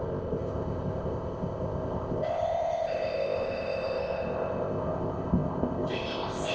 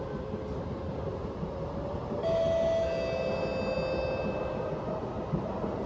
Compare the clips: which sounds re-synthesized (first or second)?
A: first